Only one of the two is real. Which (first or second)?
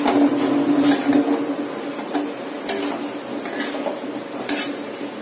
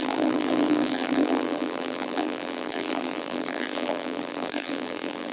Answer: first